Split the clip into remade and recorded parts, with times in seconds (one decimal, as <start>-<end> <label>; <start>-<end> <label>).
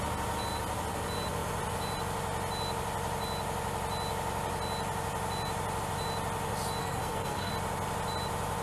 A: 0.0-6.8 recorded; 6.8-7.5 remade; 7.5-8.6 recorded